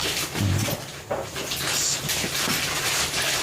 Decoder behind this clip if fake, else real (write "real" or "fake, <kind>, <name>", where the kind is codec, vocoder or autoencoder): real